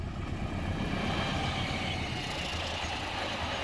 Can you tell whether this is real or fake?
real